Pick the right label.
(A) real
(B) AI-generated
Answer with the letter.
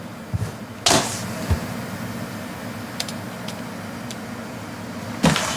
A